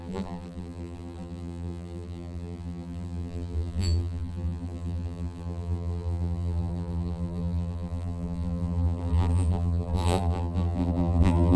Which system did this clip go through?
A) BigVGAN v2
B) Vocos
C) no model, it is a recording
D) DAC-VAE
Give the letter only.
A